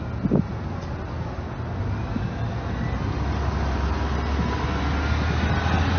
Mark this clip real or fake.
real